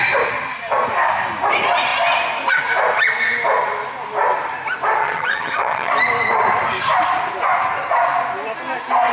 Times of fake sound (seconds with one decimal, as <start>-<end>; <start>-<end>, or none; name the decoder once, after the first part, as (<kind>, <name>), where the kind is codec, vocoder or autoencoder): 5.0-5.9 (vocoder, HiFi-GAN)